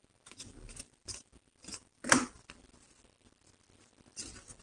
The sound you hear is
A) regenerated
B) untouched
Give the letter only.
B